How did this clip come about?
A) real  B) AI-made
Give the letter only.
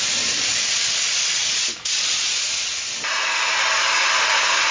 A